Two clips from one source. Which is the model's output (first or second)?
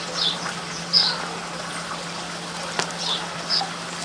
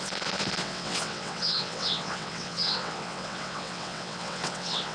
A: second